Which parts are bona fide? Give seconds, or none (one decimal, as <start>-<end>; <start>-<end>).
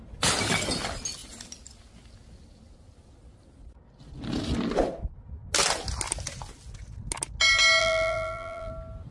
0.0-7.8; 8.7-9.1